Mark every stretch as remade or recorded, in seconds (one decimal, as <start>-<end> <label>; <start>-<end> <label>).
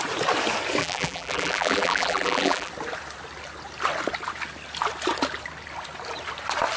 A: 0.0-0.8 recorded; 0.8-2.7 remade; 2.7-6.8 recorded